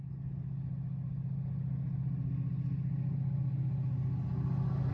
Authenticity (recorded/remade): recorded